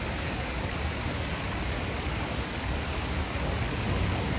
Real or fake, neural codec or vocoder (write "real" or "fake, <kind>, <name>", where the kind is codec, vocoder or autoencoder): fake, codec, DAC